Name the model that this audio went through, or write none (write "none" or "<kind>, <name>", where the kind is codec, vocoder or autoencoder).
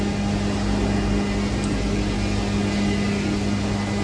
none